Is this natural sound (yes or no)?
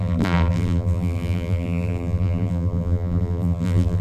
no